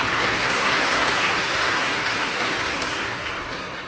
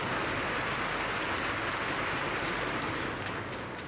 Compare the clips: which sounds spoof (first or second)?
first